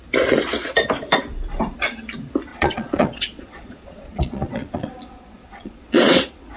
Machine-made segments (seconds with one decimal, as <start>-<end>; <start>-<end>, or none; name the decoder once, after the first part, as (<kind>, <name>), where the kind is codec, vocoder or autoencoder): 2.5-6.6 (vocoder, Vocos)

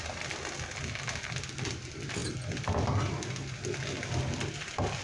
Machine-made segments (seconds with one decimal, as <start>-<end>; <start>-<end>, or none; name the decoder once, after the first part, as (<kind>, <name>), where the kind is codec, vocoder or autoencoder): none

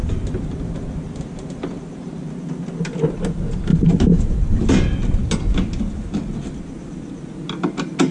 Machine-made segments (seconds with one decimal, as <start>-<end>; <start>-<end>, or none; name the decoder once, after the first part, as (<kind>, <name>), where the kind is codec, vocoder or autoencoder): 3.7-4.7 (vocoder, BigVGAN v2)

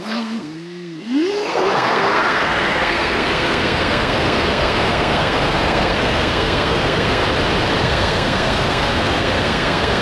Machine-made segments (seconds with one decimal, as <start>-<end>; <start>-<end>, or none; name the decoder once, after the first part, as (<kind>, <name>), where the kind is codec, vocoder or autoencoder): 0.0-7.2 (codec, SNAC); 7.8-10.0